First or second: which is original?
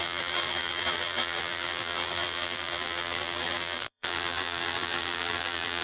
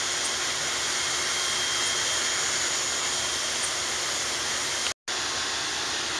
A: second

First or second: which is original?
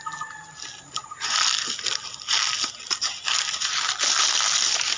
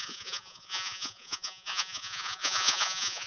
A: first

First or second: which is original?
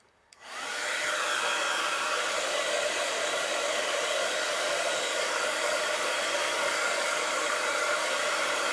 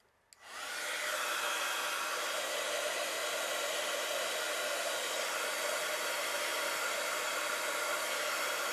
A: second